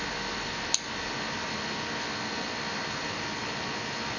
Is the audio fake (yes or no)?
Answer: no